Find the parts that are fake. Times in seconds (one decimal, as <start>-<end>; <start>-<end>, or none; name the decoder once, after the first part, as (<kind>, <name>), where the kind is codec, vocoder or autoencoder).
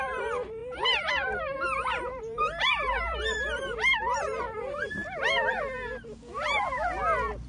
0.0-5.0 (vocoder, BigVGAN v2)